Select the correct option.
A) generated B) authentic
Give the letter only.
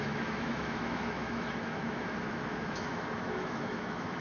A